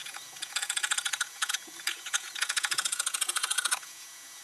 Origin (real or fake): fake